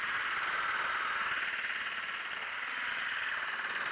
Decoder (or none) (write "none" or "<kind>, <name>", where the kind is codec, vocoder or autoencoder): none